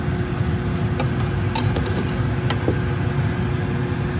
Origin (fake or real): real